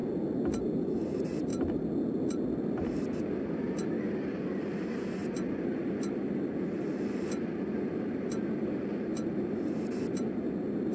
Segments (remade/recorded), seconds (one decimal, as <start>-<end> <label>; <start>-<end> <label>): 0.0-10.9 recorded